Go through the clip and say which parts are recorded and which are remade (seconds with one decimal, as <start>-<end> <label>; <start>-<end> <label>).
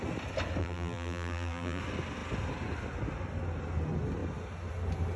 0.0-0.6 recorded; 0.6-1.8 remade; 1.8-5.2 recorded